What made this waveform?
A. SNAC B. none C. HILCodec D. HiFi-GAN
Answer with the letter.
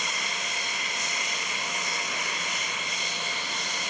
B